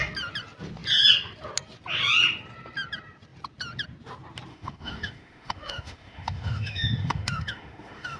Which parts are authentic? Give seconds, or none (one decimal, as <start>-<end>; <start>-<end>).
0.0-4.5